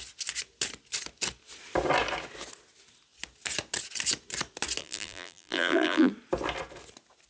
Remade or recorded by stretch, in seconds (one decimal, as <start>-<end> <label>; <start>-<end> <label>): 0.0-4.8 recorded; 4.8-6.1 remade; 6.1-7.3 recorded